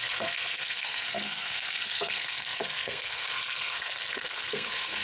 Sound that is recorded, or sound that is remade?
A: remade